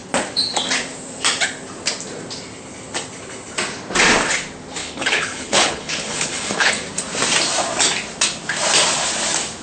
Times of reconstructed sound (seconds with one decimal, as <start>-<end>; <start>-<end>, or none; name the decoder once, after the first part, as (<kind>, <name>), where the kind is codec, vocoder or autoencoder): 4.8-6.7 (codec, HILCodec)